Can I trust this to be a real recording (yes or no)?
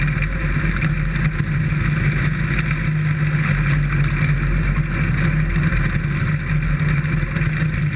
yes